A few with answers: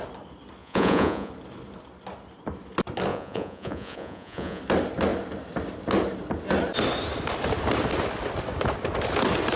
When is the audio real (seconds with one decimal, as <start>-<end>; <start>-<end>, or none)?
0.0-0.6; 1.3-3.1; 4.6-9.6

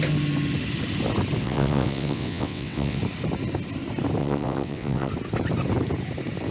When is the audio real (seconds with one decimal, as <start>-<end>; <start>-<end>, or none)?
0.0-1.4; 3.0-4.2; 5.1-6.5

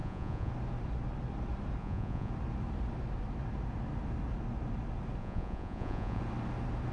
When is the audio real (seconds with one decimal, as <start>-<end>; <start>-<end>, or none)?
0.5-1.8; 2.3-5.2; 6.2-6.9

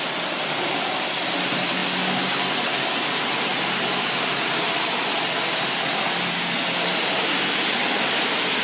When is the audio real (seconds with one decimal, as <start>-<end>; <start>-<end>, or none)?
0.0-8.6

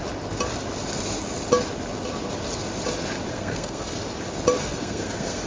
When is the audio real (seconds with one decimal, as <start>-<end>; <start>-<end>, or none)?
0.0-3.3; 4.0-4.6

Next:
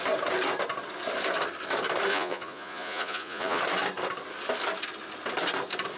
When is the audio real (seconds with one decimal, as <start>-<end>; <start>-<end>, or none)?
0.0-2.1; 3.6-6.0